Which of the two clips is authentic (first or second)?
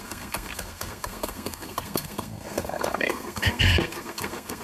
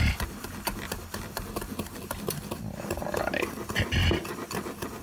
second